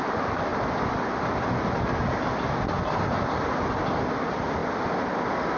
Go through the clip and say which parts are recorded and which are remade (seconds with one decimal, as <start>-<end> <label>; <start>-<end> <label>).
0.0-5.6 recorded